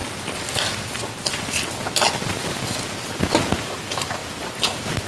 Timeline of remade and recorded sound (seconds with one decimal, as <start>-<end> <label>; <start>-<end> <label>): 0.0-4.2 recorded; 4.2-5.1 remade